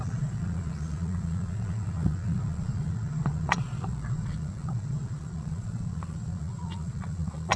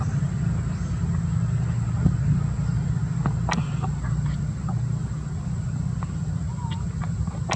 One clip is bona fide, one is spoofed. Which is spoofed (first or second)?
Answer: first